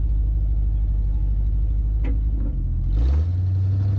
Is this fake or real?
real